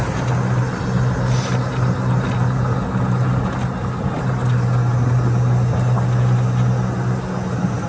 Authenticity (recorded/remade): recorded